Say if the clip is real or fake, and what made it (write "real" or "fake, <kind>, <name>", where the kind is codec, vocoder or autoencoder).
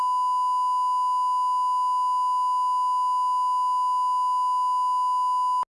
real